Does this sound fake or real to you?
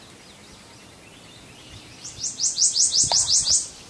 real